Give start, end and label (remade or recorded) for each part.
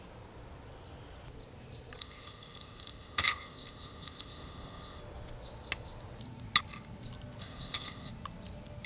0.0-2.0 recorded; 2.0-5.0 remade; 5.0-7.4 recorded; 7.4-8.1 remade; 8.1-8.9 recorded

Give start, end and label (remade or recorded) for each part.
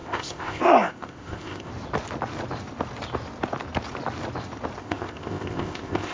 0.0-1.7 remade; 1.7-4.8 recorded; 4.8-6.1 remade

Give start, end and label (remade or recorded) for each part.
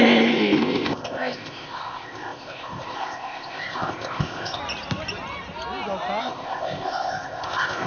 0.0-4.6 remade; 4.6-6.2 recorded; 6.2-7.9 remade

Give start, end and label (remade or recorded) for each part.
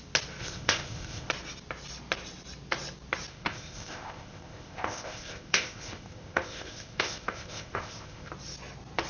0.0-0.4 recorded; 0.4-1.3 remade; 1.3-3.3 recorded; 3.3-8.3 remade; 8.3-9.1 recorded